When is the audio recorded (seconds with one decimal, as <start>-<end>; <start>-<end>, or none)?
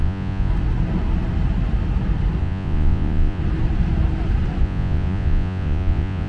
0.5-2.4; 3.4-4.6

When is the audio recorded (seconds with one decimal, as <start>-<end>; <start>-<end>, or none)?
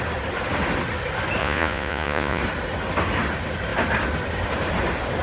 0.0-1.4; 2.4-5.2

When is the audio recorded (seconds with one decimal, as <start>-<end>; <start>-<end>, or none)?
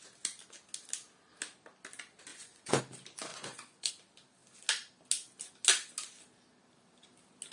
0.0-2.3; 2.8-3.3; 3.9-7.5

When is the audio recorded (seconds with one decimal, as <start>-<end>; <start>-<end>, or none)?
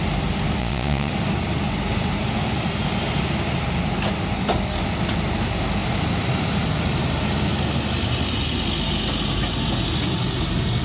0.0-0.6; 1.1-10.8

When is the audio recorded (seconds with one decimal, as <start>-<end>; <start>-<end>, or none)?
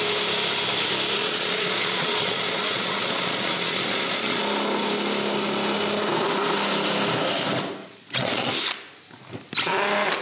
0.0-1.2; 4.4-7.8; 8.5-10.2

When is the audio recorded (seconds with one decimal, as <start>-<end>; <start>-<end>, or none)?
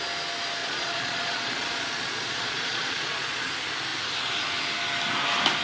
0.0-0.6; 3.5-5.6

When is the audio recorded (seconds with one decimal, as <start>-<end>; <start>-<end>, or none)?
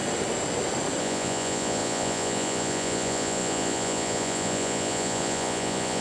0.0-1.0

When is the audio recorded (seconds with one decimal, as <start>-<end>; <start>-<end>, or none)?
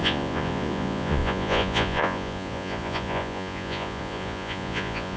none